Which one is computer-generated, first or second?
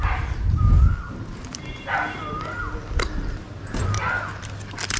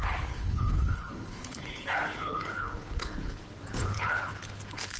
second